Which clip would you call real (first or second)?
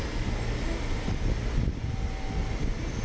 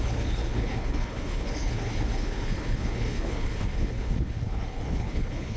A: first